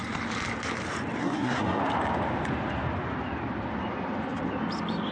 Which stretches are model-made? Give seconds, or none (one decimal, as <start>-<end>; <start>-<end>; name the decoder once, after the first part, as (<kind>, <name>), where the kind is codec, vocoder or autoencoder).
1.2-1.8 (codec, SNAC)